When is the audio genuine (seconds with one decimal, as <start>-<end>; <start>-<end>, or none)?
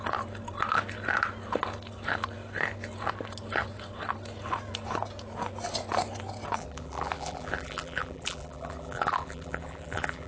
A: 0.0-6.6